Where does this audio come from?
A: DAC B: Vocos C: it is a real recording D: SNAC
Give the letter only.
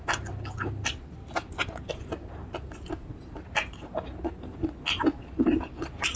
C